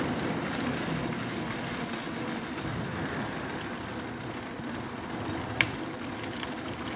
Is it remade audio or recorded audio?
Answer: recorded